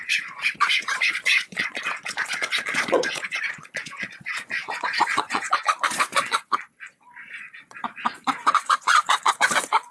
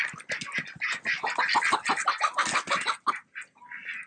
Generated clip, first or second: first